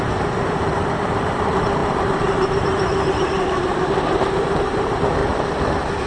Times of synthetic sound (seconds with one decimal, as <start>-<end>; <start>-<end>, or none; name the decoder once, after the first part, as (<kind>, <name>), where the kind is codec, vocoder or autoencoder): 0.0-5.2 (vocoder, BigVGAN v2)